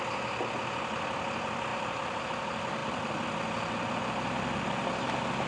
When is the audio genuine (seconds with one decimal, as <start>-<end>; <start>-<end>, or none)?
0.0-1.7; 2.2-5.5